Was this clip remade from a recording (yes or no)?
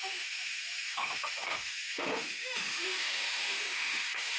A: yes